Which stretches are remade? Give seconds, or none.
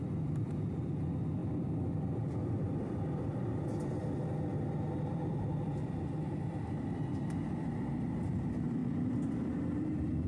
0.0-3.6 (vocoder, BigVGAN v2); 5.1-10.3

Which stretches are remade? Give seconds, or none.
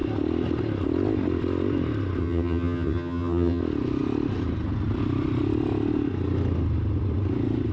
2.2-3.6 (vocoder, HiFi-GAN)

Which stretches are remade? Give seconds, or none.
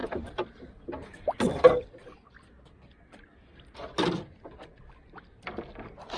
0.7-6.2 (vocoder, BigVGAN v2)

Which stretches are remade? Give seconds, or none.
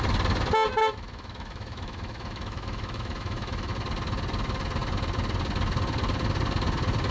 0.8-3.7 (autoencoder, DAC-VAE)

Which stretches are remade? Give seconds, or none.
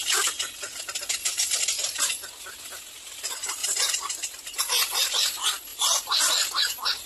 3.6-4.6 (vocoder, BigVGAN v2); 5.7-6.5